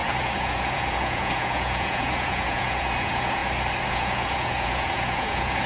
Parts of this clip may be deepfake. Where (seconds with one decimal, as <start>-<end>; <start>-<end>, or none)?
0.0-3.4; 3.9-5.7